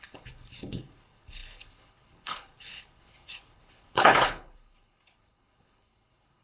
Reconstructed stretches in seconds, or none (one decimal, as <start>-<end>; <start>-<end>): 0.0-6.4